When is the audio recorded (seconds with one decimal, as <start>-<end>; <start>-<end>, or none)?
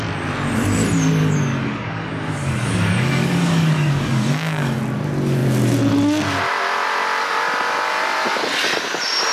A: 0.0-1.2; 4.8-9.3